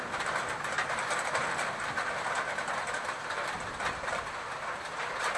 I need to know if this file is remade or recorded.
recorded